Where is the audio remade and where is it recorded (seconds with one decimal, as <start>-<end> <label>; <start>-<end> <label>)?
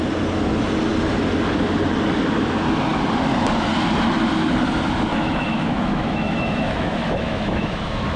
0.0-5.1 recorded; 5.1-8.2 remade